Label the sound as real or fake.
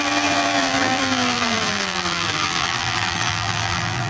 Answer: fake